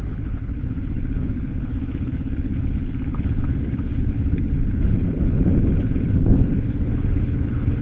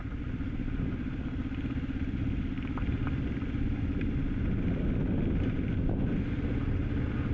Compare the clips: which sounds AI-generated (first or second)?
first